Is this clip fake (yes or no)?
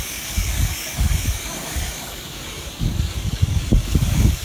yes